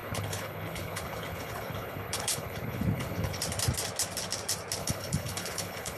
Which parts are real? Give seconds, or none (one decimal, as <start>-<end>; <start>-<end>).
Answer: 3.4-4.8